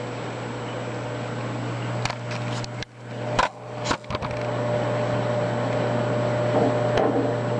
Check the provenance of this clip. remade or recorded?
recorded